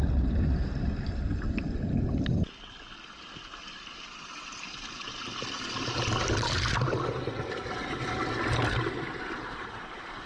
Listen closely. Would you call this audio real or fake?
real